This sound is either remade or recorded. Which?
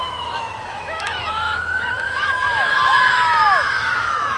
remade